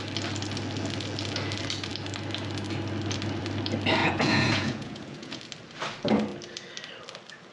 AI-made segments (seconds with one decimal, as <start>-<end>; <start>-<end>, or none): 4.0-5.4